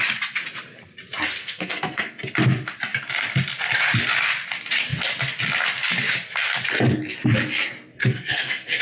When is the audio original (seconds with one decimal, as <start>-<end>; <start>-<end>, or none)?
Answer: 0.0-1.4; 2.1-8.0